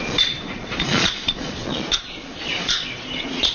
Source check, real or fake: fake